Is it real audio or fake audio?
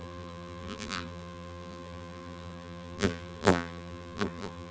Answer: fake